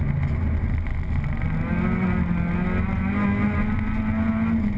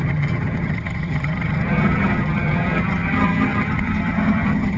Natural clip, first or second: first